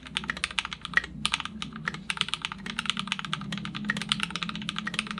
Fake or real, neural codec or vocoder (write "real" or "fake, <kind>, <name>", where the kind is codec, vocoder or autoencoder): real